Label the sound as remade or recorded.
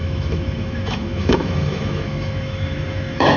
remade